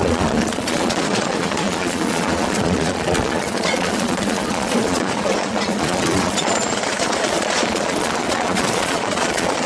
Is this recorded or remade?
remade